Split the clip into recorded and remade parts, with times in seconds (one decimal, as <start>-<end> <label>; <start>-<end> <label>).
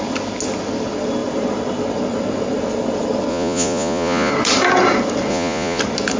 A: 0.0-3.3 recorded; 3.3-4.3 remade; 4.3-5.3 recorded; 5.3-5.8 remade; 5.8-6.2 recorded